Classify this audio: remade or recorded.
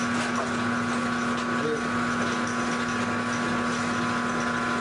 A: recorded